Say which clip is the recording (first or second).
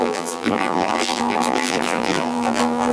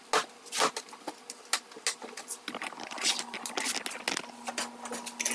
second